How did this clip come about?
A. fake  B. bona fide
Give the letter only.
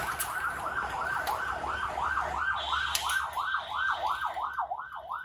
B